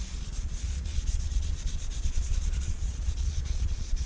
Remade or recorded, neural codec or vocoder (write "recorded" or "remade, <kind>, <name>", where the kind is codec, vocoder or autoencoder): remade, vocoder, Vocos